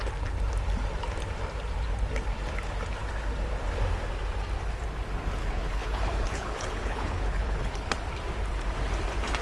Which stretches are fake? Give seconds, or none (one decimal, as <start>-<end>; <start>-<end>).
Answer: 5.4-7.9